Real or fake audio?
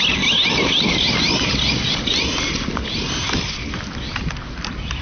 real